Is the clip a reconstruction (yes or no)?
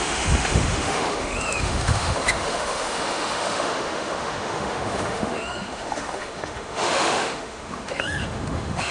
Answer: yes